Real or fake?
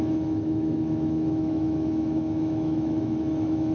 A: fake